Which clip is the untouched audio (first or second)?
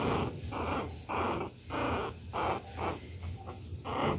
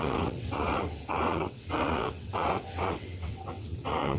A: first